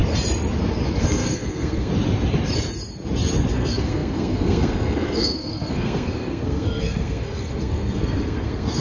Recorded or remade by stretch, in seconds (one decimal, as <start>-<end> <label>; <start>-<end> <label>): 0.0-1.0 recorded; 1.0-1.9 remade; 1.9-3.5 recorded; 3.5-8.8 remade